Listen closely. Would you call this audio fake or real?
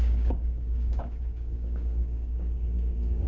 fake